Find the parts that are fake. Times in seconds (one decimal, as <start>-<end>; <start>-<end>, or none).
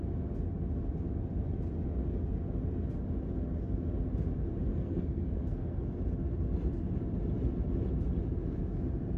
4.7-5.9